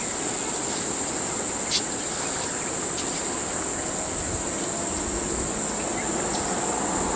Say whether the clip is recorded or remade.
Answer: recorded